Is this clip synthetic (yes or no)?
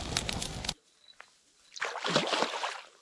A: no